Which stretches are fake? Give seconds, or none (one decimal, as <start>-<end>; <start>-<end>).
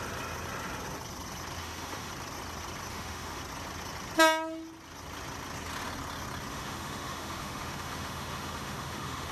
1.6-2.1; 2.9-3.4; 6.5-9.3